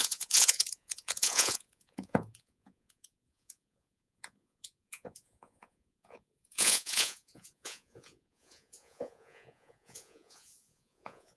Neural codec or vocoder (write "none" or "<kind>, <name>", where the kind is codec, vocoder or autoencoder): vocoder, Vocos